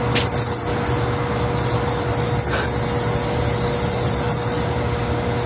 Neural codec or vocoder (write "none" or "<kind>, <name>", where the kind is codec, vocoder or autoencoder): none